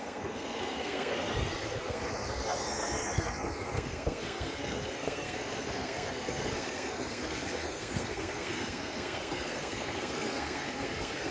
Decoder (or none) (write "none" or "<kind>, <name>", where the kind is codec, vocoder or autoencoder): codec, SNAC